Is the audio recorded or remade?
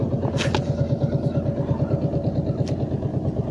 recorded